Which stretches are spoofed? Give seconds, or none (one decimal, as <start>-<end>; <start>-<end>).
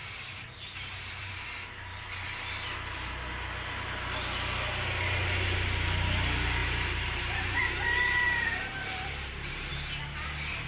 0.0-1.3; 6.6-7.6; 8.7-9.7